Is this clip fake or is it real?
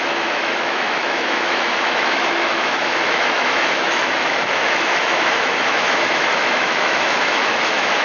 fake